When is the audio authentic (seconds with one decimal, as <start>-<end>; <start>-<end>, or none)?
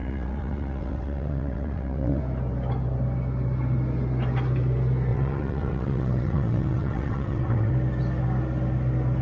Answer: 2.2-5.1; 7.7-9.2